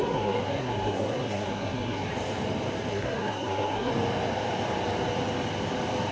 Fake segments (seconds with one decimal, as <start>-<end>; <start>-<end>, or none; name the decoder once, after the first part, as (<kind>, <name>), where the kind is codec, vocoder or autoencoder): 0.0-2.1 (codec, SNAC); 2.9-3.9